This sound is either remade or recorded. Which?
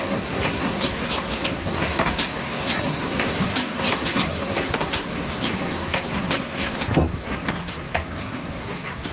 remade